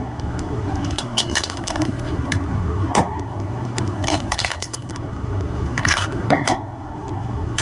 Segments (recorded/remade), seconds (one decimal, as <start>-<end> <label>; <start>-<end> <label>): 0.0-7.6 remade